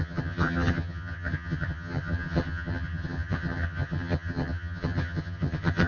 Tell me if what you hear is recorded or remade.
remade